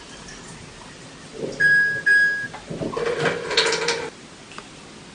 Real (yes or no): yes